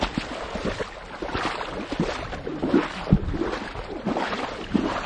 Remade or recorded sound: recorded